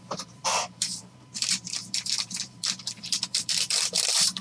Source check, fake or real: fake